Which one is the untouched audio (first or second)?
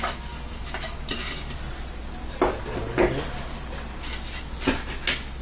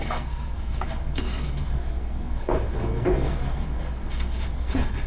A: first